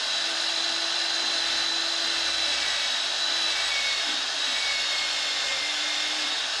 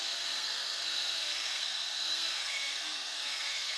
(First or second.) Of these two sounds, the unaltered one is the first